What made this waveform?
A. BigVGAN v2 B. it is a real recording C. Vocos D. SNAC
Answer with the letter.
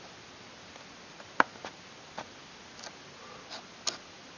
B